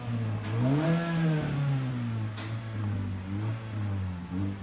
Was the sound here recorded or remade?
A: recorded